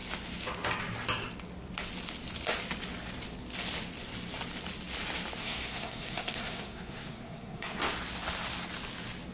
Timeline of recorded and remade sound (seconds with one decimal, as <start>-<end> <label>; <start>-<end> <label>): 0.0-5.4 recorded; 5.4-7.8 remade; 7.8-9.3 recorded